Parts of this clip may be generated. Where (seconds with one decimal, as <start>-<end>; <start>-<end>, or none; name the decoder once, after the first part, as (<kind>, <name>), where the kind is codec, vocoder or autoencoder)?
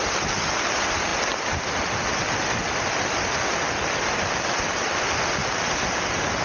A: none